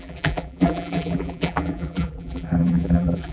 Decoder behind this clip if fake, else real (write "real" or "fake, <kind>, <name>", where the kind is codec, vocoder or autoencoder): fake, vocoder, BigVGAN v2